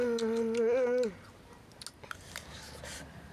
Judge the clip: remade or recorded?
recorded